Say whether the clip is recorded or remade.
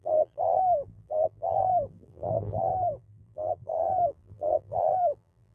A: remade